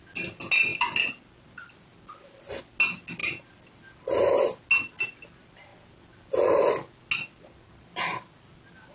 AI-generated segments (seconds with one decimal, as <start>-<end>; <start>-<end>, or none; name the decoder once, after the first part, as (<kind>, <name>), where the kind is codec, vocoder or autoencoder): none